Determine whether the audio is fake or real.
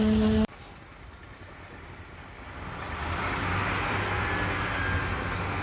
real